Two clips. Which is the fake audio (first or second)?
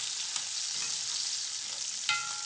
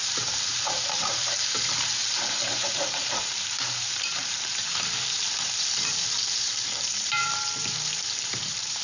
second